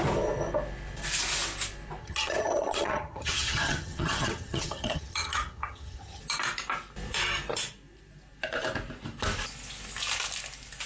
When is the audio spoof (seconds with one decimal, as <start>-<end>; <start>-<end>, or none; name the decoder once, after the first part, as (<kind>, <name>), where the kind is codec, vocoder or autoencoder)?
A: 2.0-6.2 (vocoder, HiFi-GAN)